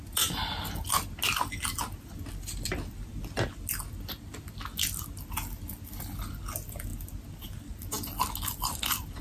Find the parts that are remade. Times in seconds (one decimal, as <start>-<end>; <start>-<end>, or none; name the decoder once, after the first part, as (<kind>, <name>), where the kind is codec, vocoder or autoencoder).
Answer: none